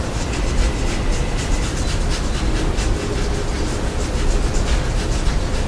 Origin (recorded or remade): recorded